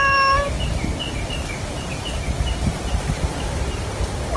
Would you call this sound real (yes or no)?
yes